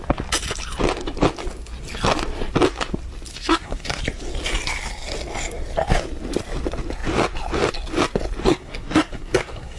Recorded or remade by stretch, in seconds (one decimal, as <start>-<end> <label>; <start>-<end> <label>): 0.0-3.3 recorded; 3.3-4.0 remade; 4.0-8.4 recorded; 8.4-9.8 remade